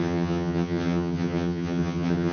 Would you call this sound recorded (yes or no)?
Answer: no